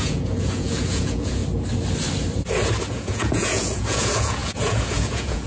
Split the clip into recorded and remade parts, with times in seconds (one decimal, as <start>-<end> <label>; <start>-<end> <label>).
0.0-1.4 remade; 1.4-2.9 recorded; 2.9-5.5 remade